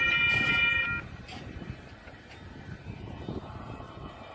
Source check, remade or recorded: recorded